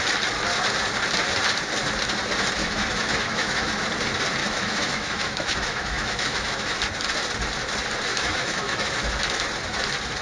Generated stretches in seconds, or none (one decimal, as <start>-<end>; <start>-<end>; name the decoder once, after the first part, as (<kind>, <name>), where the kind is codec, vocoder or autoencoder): 2.6-3.7 (autoencoder, DAC-VAE); 4.4-6.8; 8.1-8.9